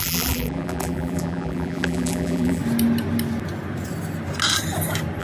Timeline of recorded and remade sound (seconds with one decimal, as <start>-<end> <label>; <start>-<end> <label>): 0.0-2.6 remade; 2.6-5.2 recorded